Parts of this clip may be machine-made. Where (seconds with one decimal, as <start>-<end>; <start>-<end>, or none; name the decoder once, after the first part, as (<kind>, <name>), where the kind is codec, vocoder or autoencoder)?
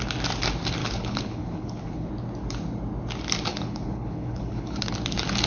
0.8-2.1 (codec, HILCodec); 3.5-4.9